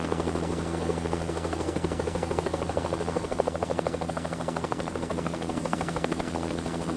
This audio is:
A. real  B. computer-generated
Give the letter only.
B